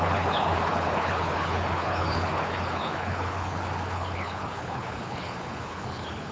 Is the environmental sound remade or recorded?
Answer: remade